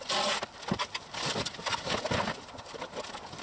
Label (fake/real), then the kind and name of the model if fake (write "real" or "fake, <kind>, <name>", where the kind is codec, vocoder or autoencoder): real